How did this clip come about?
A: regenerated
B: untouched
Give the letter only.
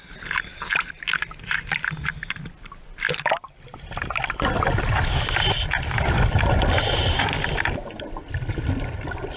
B